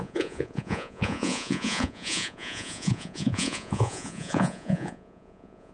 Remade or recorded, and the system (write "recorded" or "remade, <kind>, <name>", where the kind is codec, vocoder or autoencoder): remade, vocoder, Vocos